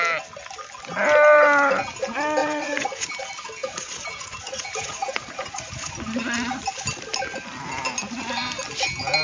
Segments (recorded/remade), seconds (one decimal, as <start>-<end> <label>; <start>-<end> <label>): 0.0-2.4 recorded; 2.4-3.1 remade; 3.1-3.6 recorded; 3.6-5.9 remade; 5.9-9.2 recorded